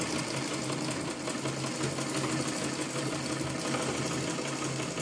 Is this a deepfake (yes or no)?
no